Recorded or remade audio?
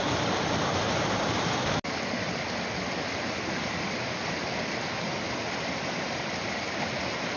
recorded